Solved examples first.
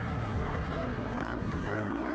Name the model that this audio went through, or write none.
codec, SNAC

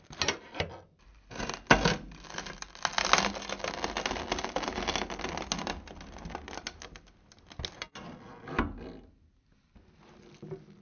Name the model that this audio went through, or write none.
none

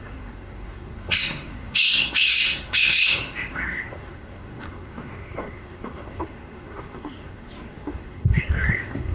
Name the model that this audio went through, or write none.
codec, SNAC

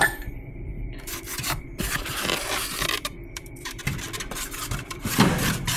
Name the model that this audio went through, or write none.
vocoder, BigVGAN v2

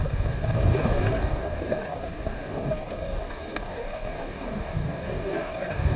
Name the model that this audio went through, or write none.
codec, DAC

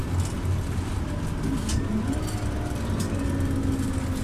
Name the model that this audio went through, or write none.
none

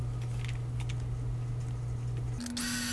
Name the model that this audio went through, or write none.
none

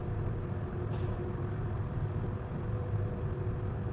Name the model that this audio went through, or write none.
none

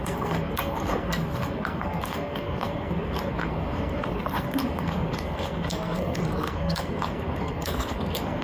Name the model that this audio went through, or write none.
codec, SNAC